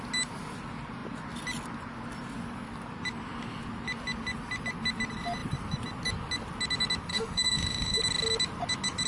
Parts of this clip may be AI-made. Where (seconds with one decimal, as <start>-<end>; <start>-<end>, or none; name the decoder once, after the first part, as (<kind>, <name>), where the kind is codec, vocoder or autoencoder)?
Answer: 7.1-8.0 (autoencoder, DAC-VAE)